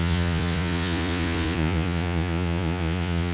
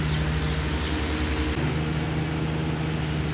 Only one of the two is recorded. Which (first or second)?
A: second